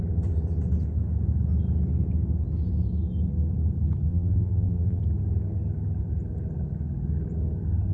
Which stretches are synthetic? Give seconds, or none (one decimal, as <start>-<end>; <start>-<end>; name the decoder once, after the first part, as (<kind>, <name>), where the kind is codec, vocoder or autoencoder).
4.1-5.0 (vocoder, BigVGAN v2)